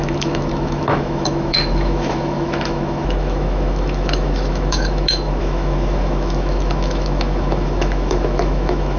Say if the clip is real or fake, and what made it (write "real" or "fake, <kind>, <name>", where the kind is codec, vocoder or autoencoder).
fake, autoencoder, DAC-VAE